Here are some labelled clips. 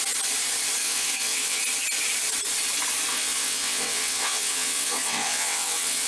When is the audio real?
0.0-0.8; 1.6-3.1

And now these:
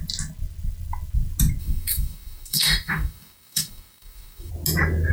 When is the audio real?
0.0-1.6; 4.5-5.1

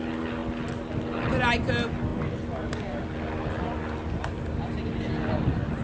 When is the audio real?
0.0-5.8

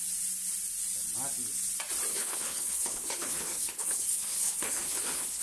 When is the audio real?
0.0-2.1

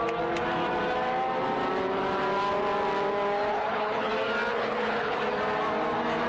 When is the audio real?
0.0-3.5; 4.1-4.5; 5.2-6.3

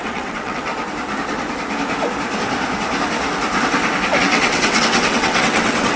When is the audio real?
0.7-4.2